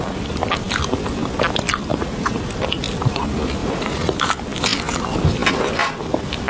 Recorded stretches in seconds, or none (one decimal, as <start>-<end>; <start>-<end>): 0.0-1.9; 2.5-3.6; 4.2-6.5